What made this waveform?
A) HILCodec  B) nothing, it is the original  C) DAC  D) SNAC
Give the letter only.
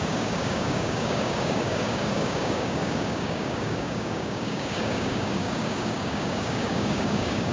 C